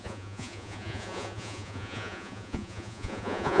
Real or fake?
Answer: fake